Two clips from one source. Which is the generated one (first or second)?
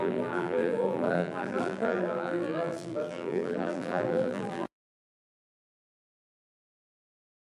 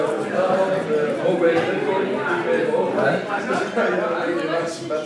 first